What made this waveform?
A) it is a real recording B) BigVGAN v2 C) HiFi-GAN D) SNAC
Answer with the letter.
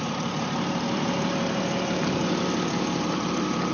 B